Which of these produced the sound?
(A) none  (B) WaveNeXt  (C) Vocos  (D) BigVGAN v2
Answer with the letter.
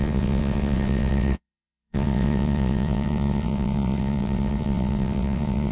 B